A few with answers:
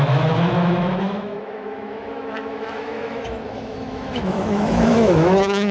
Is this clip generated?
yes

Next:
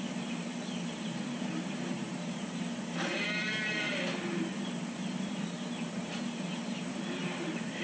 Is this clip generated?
yes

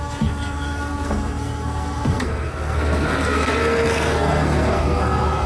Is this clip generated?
yes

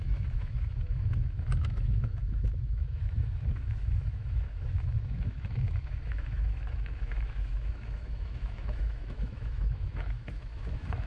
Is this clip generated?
yes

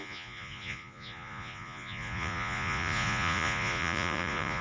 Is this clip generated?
yes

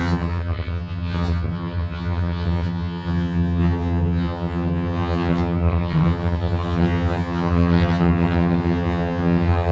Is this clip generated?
yes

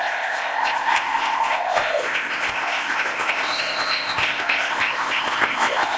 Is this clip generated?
yes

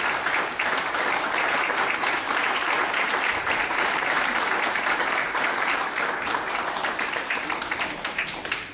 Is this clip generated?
yes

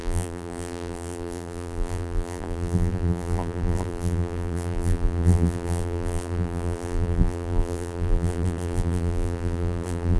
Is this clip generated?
yes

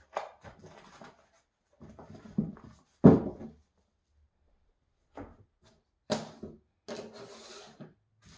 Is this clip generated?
no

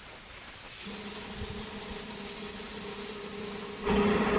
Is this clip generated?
no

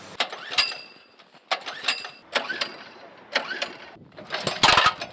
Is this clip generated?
no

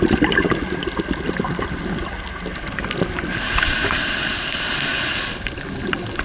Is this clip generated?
no